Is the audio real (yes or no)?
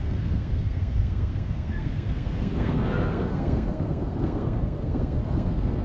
no